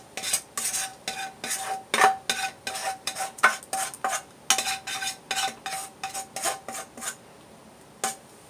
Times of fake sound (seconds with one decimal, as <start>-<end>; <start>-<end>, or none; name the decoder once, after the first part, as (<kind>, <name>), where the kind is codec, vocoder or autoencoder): 2.8-3.6 (vocoder, BigVGAN v2)